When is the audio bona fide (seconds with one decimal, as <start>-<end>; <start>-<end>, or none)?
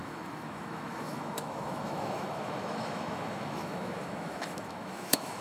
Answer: none